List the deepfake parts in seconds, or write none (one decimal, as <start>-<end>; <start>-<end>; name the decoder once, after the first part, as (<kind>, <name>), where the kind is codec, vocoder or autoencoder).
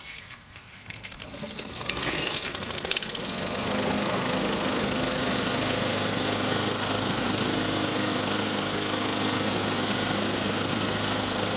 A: 0.0-11.6 (codec, SNAC)